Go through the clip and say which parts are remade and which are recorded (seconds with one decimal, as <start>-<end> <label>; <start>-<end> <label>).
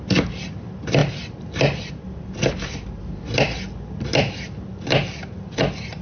0.0-6.0 recorded